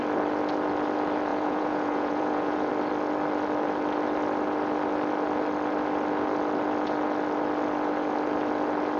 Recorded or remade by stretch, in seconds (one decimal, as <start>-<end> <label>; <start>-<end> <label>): 0.0-1.3 recorded; 1.3-2.7 remade; 2.7-9.0 recorded